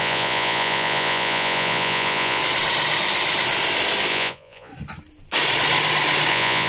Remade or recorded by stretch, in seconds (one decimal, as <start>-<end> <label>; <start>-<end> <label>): 0.0-2.4 remade; 2.4-4.1 recorded; 4.1-4.7 remade; 4.7-6.3 recorded; 6.3-6.7 remade